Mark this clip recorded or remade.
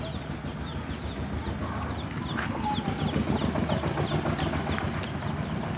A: recorded